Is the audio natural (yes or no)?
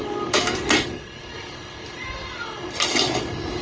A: yes